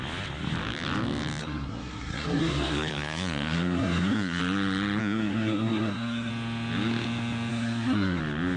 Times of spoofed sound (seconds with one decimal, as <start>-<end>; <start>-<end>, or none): 1.4-4.4; 5.0-6.3; 7.5-8.2